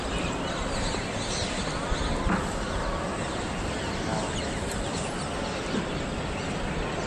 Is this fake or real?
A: real